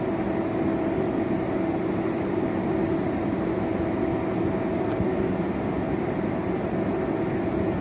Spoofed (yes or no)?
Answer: no